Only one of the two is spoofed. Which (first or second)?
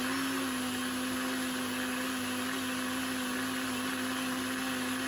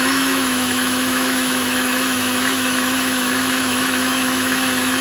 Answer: second